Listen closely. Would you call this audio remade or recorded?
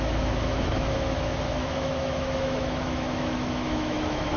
remade